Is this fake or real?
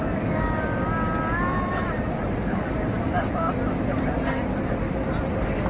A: real